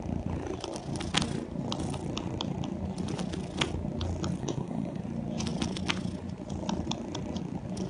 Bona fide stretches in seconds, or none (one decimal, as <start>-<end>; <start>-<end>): 0.0-4.4; 5.0-7.9